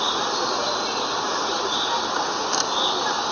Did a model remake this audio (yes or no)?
no